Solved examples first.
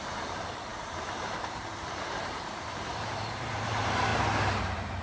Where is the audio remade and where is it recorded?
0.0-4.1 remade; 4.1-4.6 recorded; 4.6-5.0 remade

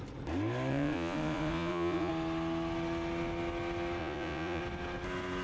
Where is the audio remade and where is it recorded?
0.0-0.7 recorded; 0.7-2.1 remade; 2.1-4.0 recorded; 4.0-4.6 remade; 4.6-5.4 recorded

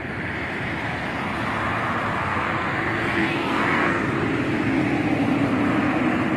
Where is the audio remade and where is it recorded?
0.0-2.2 recorded; 2.2-4.0 remade; 4.0-6.4 recorded

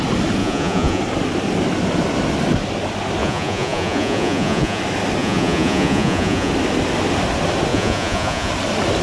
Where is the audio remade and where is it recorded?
0.0-0.4 recorded; 0.4-1.0 remade; 1.0-3.2 recorded; 3.2-4.8 remade; 4.8-5.2 recorded; 5.2-6.5 remade; 6.5-7.7 recorded; 7.7-8.5 remade; 8.5-9.0 recorded

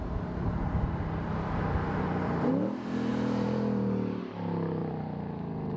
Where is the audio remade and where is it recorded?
0.0-0.5 recorded; 0.5-2.5 remade; 2.5-3.1 recorded; 3.1-4.2 remade; 4.2-4.8 recorded; 4.8-5.8 remade

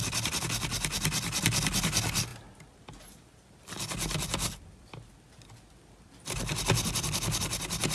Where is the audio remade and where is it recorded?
0.0-7.9 recorded

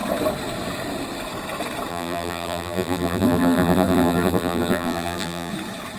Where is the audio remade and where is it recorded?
0.0-1.9 recorded; 1.9-5.5 remade; 5.5-6.0 recorded